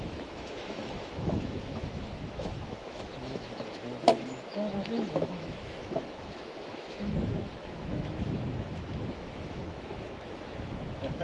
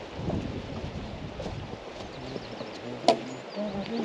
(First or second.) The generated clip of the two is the first